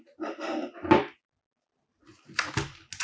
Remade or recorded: recorded